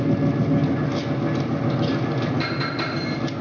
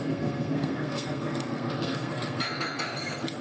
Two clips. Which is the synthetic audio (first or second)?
second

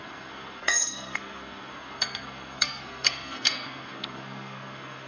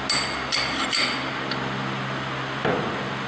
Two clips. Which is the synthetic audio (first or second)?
first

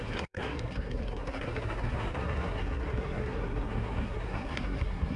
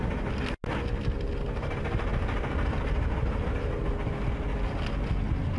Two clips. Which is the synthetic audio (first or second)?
first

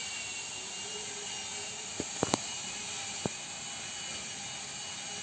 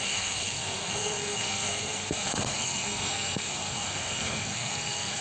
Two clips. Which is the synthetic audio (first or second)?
second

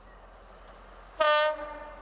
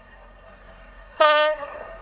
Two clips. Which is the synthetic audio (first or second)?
second